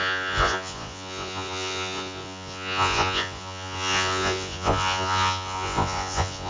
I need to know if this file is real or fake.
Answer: fake